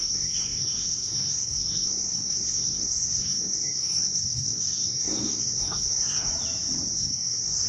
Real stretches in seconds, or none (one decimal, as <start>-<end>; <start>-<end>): 6.3-6.9